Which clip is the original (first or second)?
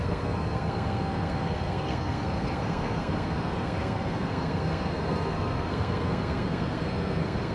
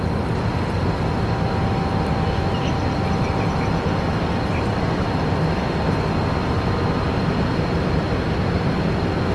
second